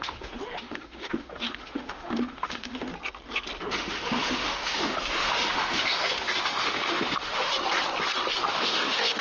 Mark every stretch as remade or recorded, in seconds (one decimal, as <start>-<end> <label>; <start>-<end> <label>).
0.0-2.9 remade; 2.9-3.6 recorded; 3.6-7.5 remade; 7.5-8.3 recorded; 8.3-9.2 remade

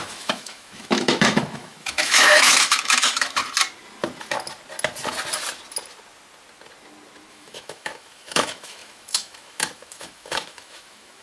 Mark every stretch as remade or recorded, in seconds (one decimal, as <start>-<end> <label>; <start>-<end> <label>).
0.0-3.4 remade; 3.4-7.3 recorded; 7.3-11.2 remade

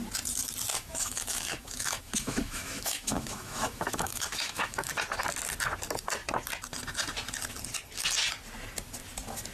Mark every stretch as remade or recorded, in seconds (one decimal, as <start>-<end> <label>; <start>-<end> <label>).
0.0-0.7 recorded; 0.7-4.9 remade; 4.9-9.5 recorded

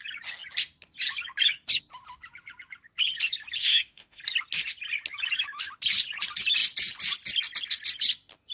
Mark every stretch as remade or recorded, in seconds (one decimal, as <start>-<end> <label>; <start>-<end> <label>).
0.0-3.6 recorded; 3.6-4.2 remade; 4.2-8.5 recorded

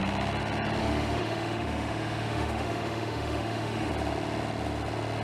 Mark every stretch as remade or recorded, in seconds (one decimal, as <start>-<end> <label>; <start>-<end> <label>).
0.0-0.8 recorded; 0.8-3.9 remade; 3.9-5.2 recorded

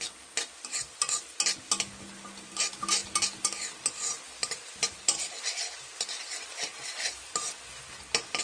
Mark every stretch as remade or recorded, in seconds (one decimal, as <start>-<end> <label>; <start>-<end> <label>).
0.0-8.4 recorded

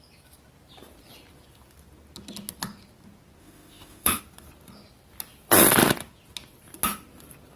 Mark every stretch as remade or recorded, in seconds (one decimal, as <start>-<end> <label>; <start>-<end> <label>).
0.0-3.4 recorded; 3.4-4.2 remade; 4.2-7.6 recorded